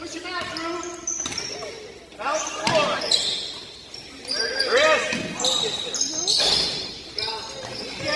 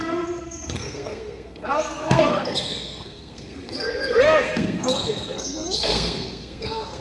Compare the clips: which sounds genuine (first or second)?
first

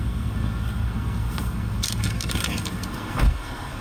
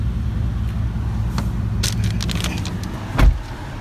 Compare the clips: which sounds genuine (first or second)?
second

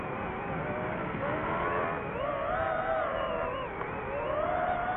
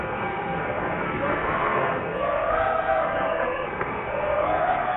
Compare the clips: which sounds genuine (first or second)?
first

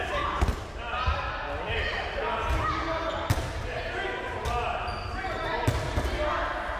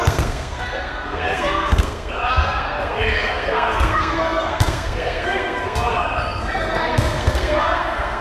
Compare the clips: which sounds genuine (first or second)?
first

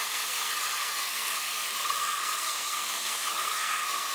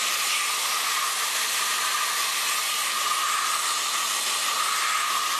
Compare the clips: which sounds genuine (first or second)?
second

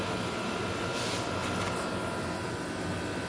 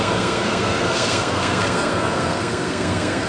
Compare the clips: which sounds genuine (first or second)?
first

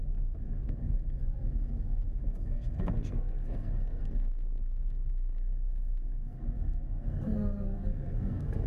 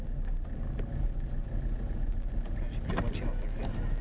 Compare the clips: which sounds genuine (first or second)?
second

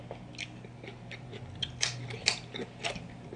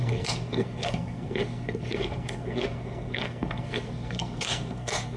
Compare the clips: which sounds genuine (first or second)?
first